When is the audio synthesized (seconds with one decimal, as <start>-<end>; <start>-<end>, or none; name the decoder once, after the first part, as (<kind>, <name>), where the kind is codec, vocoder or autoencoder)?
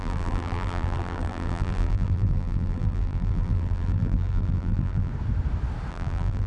0.0-5.1 (vocoder, BigVGAN v2); 5.9-6.5